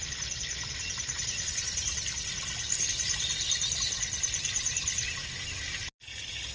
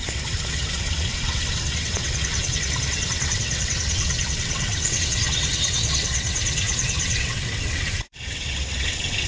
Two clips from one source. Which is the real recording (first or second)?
first